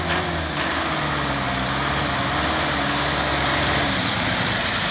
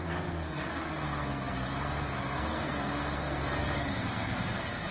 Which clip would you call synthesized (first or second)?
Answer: second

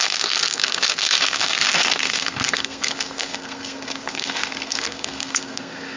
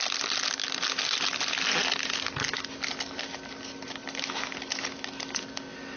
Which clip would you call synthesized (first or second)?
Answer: first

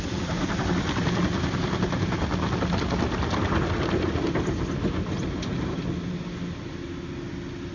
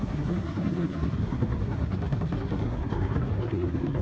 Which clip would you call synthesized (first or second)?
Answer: second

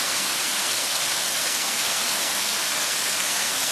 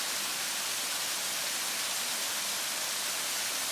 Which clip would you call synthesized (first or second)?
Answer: first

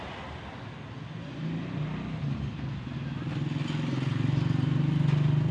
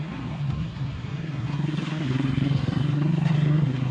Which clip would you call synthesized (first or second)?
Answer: second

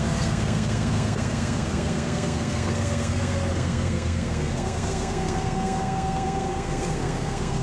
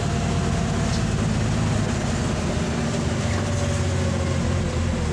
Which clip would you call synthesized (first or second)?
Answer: first